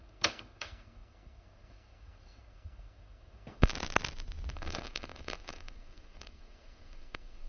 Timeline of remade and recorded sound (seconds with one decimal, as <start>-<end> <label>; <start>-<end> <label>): 0.0-3.7 remade; 3.7-4.5 recorded; 4.5-7.5 remade